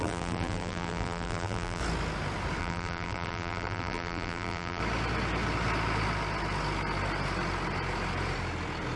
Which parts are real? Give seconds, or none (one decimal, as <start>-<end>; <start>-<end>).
1.8-2.6; 4.8-9.0